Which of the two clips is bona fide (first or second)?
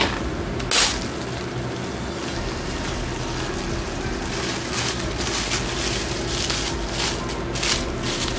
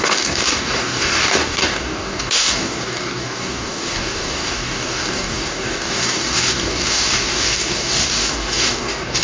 first